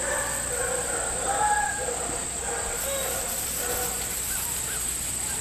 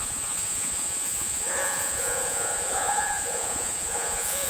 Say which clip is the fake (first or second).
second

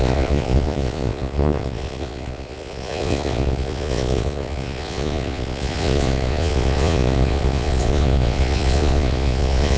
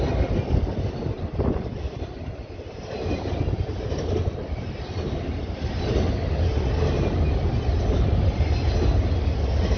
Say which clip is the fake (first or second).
first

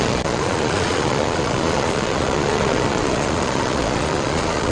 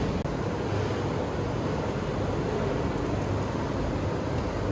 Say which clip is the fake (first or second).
first